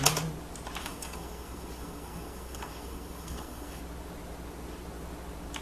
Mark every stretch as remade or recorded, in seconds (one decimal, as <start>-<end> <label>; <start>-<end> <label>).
0.0-0.8 recorded; 0.8-3.8 remade; 3.8-5.6 recorded